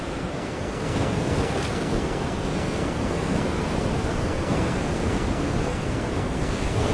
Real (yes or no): no